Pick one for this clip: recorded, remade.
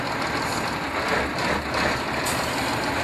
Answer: recorded